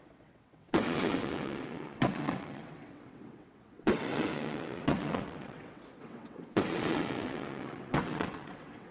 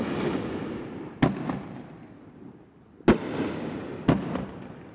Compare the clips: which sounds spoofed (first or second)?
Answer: first